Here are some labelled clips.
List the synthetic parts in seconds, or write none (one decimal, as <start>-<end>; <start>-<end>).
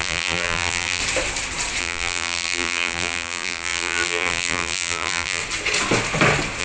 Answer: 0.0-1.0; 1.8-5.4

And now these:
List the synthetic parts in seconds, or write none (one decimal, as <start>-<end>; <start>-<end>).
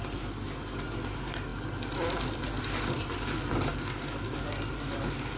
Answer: none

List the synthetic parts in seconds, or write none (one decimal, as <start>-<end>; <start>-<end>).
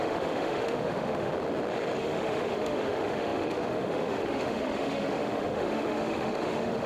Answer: 0.0-1.3; 2.0-6.9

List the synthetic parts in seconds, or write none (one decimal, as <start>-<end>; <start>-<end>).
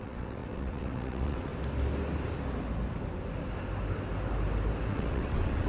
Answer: 0.0-1.5; 4.9-5.7